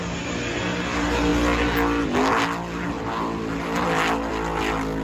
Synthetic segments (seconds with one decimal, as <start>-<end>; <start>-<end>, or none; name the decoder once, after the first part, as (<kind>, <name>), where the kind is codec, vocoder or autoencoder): none